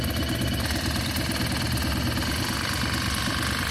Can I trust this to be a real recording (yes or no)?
yes